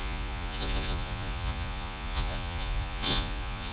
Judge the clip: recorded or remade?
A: remade